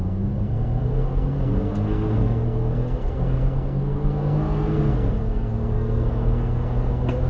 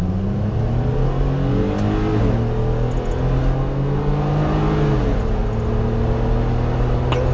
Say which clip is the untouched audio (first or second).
second